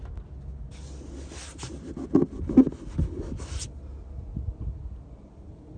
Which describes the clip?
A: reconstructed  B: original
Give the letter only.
B